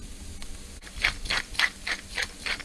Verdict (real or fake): real